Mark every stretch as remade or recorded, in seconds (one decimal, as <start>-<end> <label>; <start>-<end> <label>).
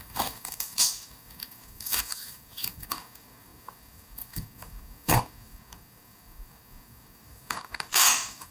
0.0-8.5 remade